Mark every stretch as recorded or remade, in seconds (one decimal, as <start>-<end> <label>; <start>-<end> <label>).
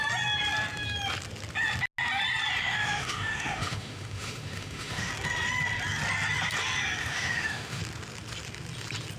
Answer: 0.0-2.6 recorded; 2.6-5.1 remade; 5.1-7.0 recorded; 7.0-7.8 remade; 7.8-9.2 recorded